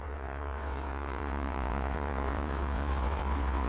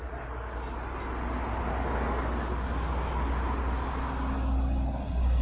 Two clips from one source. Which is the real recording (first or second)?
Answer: second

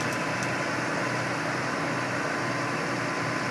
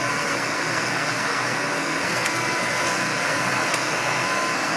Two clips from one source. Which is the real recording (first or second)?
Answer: first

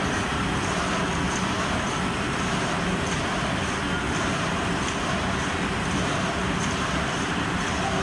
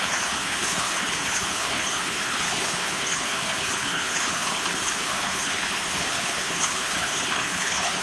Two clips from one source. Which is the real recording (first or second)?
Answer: first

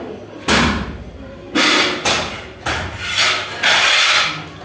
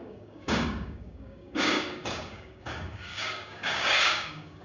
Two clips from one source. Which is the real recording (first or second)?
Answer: first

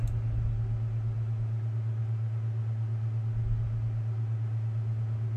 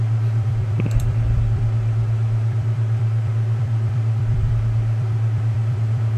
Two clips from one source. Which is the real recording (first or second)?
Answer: first